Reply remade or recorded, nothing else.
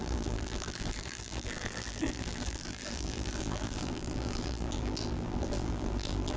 remade